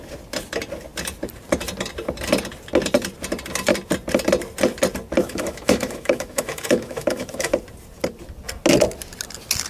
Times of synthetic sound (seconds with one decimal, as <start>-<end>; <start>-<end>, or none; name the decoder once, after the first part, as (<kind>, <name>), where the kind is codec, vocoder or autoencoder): 5.2-7.5 (autoencoder, DAC-VAE)